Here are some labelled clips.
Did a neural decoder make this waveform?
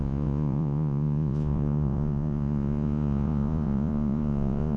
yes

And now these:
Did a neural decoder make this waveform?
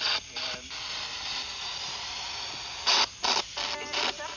no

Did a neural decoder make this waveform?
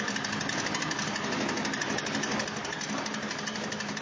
no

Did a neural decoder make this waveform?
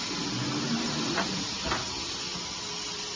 no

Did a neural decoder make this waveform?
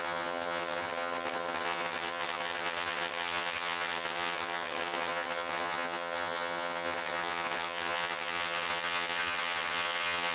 yes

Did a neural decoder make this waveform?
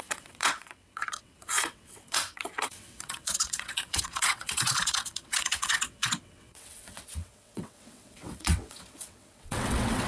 yes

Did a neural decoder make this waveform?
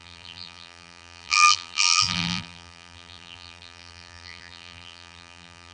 yes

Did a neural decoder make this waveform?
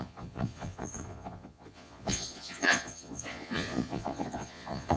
yes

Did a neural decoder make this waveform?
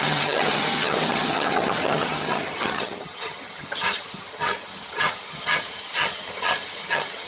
yes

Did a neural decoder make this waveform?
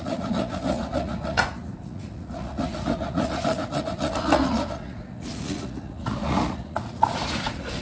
yes